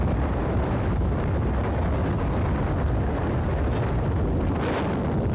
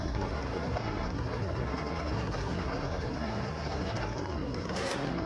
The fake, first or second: second